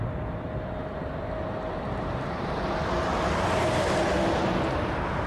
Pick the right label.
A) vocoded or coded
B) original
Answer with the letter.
B